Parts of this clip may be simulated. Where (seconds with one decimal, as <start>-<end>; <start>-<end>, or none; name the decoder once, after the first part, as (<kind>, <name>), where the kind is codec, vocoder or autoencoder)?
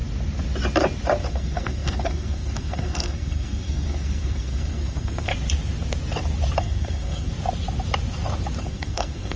1.3-5.3 (codec, SNAC); 6.6-7.3; 8.6-9.4